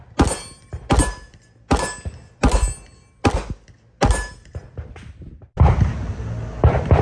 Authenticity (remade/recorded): recorded